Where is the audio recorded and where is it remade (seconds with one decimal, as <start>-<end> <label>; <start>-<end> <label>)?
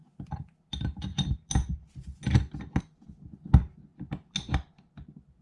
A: 0.0-5.4 recorded